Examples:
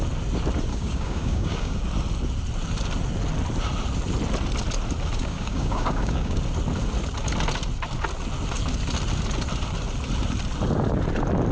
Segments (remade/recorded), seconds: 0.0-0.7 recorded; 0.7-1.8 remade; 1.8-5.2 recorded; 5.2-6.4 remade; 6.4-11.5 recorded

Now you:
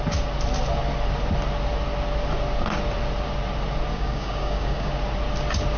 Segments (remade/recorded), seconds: 0.0-3.9 recorded; 3.9-4.9 remade; 4.9-5.8 recorded

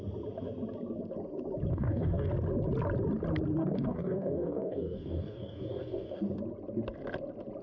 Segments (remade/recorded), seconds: 0.0-1.7 recorded; 1.7-2.3 remade; 2.3-3.6 recorded; 3.6-6.2 remade; 6.2-7.6 recorded

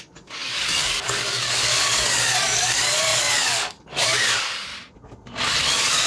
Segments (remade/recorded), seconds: 0.0-4.7 remade; 4.7-5.6 recorded; 5.6-6.1 remade